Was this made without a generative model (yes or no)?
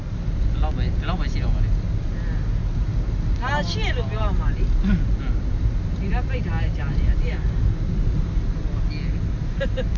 yes